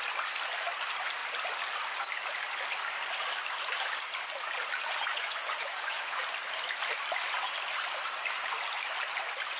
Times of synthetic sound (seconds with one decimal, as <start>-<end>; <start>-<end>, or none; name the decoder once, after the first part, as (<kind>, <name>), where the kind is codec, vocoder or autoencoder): 5.1-6.2 (vocoder, Vocos)